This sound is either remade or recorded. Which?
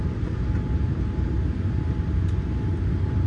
recorded